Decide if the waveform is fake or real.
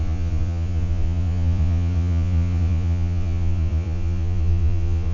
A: fake